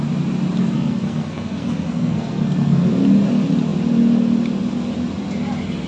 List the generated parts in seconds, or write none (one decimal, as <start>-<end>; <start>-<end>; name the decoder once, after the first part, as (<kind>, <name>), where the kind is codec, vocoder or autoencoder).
0.6-2.9 (codec, SNAC)